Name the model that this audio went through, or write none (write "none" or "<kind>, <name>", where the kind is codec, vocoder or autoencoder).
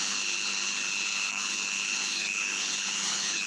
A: codec, HILCodec